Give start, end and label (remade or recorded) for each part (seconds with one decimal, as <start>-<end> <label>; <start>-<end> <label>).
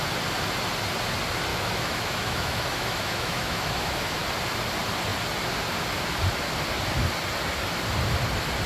0.0-1.5 recorded; 1.5-4.2 remade; 4.2-8.7 recorded